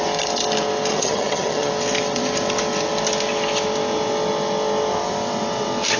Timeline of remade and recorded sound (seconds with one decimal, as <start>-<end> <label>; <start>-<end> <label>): 0.0-0.9 recorded; 0.9-1.7 remade; 1.7-6.0 recorded